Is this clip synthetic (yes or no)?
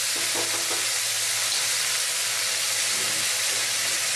no